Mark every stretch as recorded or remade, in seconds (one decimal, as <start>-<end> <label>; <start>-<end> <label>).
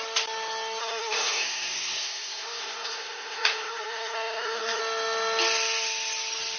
0.0-0.8 recorded; 0.8-4.8 remade; 4.8-6.6 recorded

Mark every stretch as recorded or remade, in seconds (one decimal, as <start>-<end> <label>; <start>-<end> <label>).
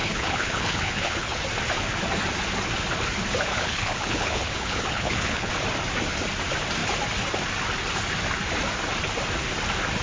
0.0-1.4 remade; 1.4-3.5 recorded; 3.5-5.5 remade; 5.5-10.0 recorded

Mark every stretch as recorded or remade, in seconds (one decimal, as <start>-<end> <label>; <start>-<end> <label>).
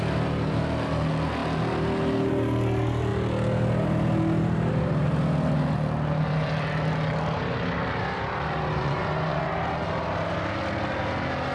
0.0-8.8 recorded; 8.8-9.5 remade; 9.5-11.5 recorded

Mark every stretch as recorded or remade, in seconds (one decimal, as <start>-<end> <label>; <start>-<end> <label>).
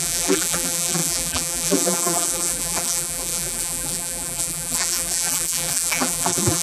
0.0-6.6 remade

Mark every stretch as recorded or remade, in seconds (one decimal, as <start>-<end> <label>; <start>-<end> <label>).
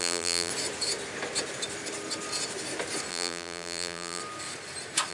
0.0-0.5 remade; 0.5-3.1 recorded; 3.1-4.2 remade; 4.2-5.1 recorded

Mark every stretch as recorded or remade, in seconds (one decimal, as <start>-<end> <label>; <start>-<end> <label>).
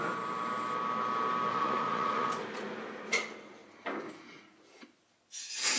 0.0-1.5 recorded; 1.5-2.3 remade; 2.3-5.8 recorded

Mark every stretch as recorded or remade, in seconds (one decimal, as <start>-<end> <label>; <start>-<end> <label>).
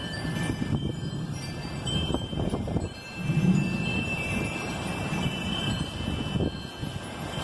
0.0-3.4 remade; 3.4-3.9 recorded; 3.9-6.0 remade; 6.0-7.4 recorded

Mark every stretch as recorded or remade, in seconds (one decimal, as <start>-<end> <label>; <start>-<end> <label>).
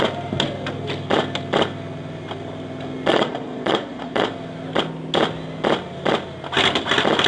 0.0-3.1 recorded; 3.1-4.3 remade; 4.3-7.3 recorded